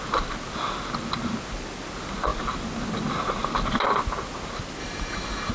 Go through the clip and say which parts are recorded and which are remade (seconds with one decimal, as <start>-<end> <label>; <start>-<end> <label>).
0.0-4.8 recorded; 4.8-5.5 remade